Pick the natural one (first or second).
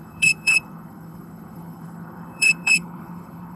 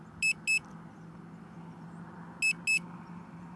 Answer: second